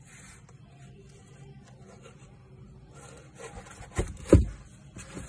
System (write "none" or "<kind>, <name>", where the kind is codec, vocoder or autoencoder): none